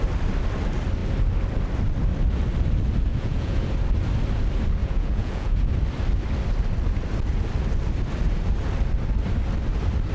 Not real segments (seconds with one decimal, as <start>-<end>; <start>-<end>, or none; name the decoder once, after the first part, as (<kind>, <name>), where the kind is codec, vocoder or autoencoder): 3.1-3.6 (vocoder, Vocos); 4.8-5.7